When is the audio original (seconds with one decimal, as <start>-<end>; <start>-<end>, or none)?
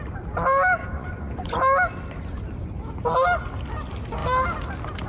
0.0-0.8; 1.6-5.1